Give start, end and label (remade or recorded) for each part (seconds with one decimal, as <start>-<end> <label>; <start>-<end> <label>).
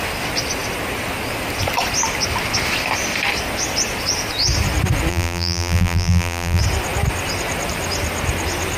0.0-5.1 recorded; 5.1-6.6 remade; 6.6-8.8 recorded